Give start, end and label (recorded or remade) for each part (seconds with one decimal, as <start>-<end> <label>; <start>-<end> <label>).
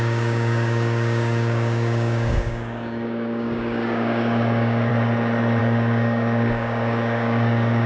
0.0-4.9 remade; 4.9-5.6 recorded; 5.6-7.9 remade